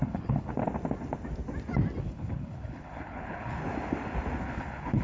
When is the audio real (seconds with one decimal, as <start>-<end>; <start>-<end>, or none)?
0.5-2.0; 3.6-4.4